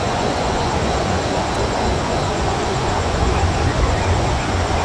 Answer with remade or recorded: remade